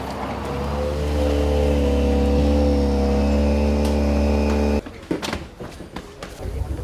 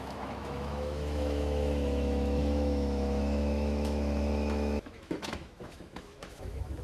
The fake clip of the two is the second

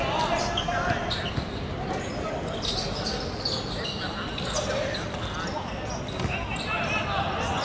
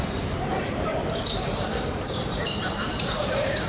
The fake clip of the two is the second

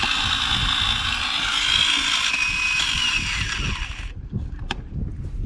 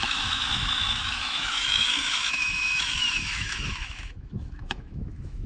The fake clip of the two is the second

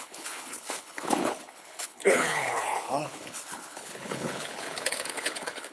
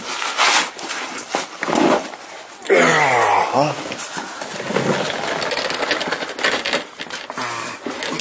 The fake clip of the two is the first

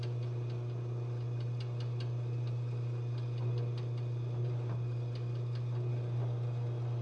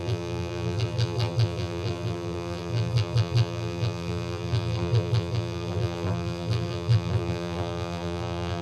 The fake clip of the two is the second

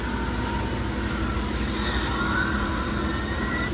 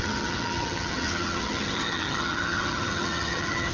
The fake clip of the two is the second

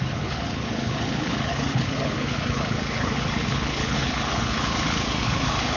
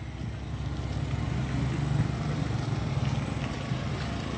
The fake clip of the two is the first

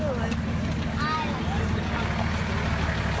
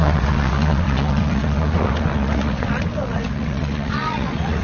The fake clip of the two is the second